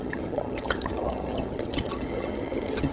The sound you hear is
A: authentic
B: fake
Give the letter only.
B